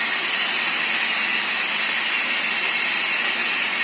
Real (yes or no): yes